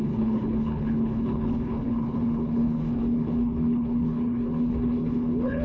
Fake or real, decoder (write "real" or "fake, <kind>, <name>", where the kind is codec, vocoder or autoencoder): fake, codec, HILCodec